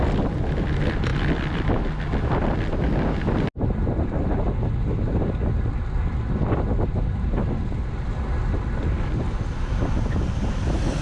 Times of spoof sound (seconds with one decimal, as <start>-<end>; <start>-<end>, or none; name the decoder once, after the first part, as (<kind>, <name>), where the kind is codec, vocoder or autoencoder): none

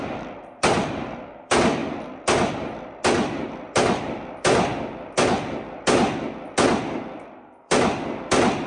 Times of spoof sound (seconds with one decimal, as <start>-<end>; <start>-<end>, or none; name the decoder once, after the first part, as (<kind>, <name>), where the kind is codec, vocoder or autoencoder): 0.0-1.8 (vocoder, BigVGAN v2); 4.0-4.7; 6.8-8.7